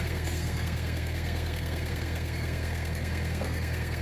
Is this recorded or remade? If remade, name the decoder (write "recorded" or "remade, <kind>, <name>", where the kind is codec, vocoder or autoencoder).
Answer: remade, codec, SNAC